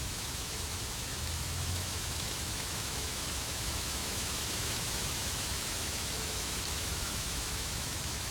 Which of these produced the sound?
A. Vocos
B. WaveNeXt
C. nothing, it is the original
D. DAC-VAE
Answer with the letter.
D